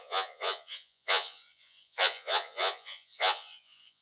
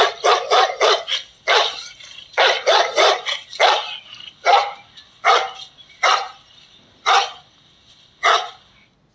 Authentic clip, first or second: second